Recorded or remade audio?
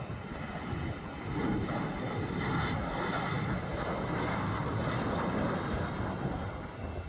recorded